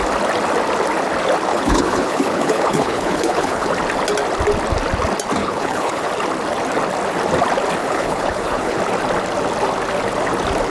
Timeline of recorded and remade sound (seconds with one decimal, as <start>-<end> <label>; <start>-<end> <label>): 0.0-1.5 recorded; 1.5-3.7 remade; 3.7-5.4 recorded; 5.4-6.1 remade; 6.1-7.8 recorded; 7.8-8.8 remade; 8.8-10.7 recorded